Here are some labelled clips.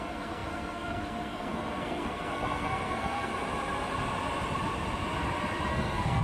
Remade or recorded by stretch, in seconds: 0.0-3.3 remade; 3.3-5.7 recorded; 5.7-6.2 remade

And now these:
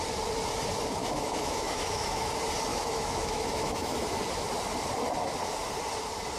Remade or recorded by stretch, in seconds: 0.0-1.0 recorded; 1.0-2.3 remade; 2.3-2.7 recorded; 2.7-4.2 remade; 4.2-6.4 recorded